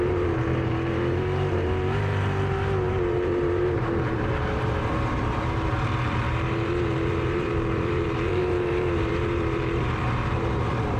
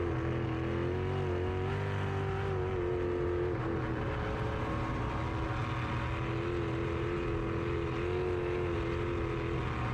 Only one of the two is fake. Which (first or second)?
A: first